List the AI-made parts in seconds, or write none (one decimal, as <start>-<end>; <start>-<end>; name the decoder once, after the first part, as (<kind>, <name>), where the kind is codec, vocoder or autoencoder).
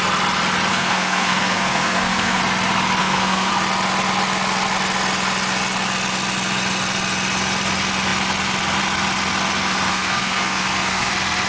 0.7-2.4 (codec, SNAC); 3.0-3.5; 9.9-11.1